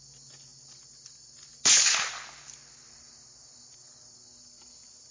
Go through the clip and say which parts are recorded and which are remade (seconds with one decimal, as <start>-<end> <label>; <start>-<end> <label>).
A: 0.0-5.1 recorded